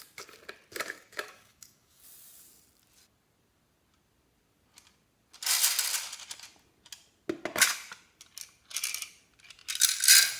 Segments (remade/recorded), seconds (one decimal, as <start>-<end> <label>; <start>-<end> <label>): 0.0-0.7 recorded; 0.7-2.0 remade; 2.0-10.4 recorded